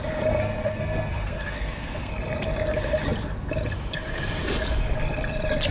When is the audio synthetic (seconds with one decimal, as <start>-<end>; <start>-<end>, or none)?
0.4-2.1